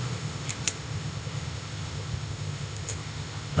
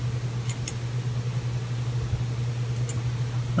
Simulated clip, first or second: first